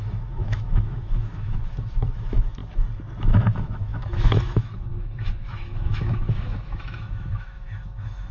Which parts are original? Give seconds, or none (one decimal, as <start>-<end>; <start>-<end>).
2.6-3.2